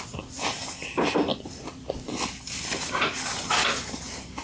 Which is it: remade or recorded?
recorded